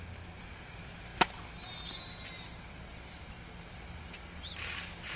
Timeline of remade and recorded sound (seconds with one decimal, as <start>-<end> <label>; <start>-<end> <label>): 0.0-5.2 recorded